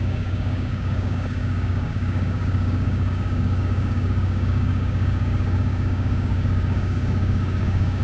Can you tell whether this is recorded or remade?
remade